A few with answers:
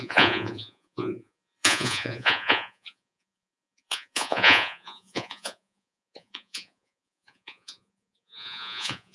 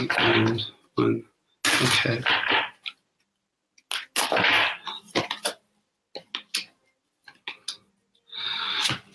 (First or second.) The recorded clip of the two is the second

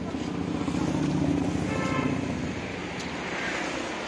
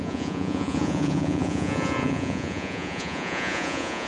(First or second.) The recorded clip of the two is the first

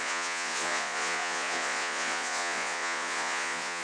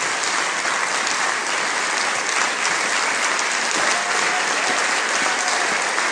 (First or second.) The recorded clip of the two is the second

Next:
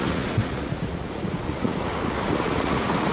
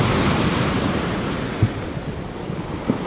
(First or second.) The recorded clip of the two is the second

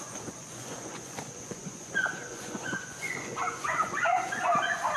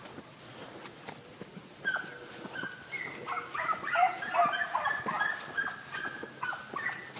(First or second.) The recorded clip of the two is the second